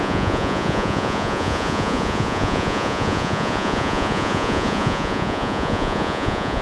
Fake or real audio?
fake